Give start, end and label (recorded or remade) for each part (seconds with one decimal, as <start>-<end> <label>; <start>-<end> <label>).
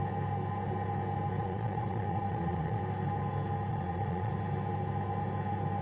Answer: 0.0-1.4 recorded; 1.4-2.8 remade; 2.8-3.7 recorded; 3.7-4.3 remade; 4.3-5.8 recorded